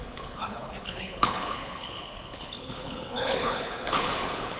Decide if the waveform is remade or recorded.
remade